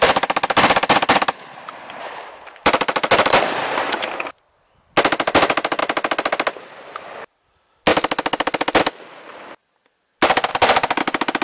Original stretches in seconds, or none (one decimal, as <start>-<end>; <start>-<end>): 0.0-11.4